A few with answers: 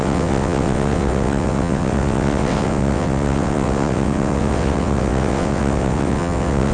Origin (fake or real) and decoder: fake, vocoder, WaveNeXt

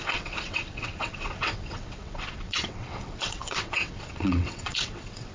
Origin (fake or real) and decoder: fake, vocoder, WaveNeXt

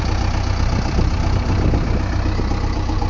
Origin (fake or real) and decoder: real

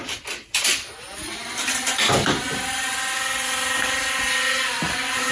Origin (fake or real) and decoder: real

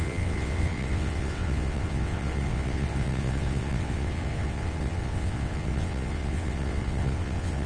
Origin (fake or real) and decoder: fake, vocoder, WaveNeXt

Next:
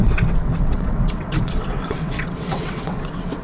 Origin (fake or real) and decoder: fake, vocoder, WaveNeXt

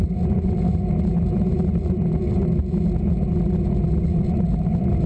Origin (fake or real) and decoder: real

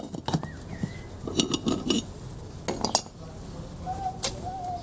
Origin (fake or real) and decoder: real